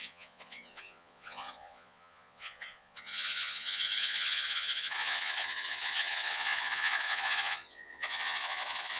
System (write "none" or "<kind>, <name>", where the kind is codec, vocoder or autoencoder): vocoder, Vocos